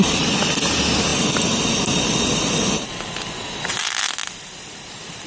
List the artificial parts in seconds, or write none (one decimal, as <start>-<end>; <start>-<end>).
none